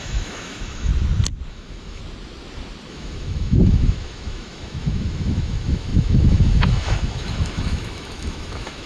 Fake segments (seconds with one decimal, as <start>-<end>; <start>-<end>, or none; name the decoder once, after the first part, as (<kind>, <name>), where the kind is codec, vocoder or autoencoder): 0.0-0.9 (autoencoder, DAC-VAE); 1.5-2.0; 2.9-8.9